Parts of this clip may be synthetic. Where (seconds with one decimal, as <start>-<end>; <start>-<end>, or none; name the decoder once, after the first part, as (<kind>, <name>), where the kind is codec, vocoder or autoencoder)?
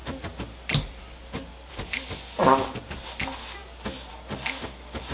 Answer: none